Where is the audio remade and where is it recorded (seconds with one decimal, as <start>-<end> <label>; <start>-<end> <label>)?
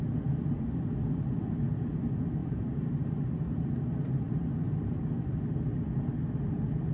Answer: 0.0-2.4 recorded; 2.4-3.9 remade; 3.9-6.9 recorded